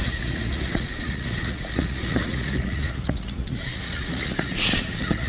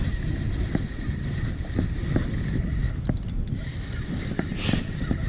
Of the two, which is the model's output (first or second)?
first